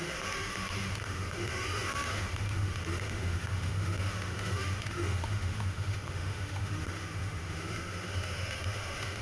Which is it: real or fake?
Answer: fake